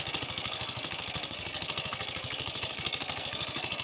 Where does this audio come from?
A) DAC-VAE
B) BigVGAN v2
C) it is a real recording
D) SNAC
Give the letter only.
D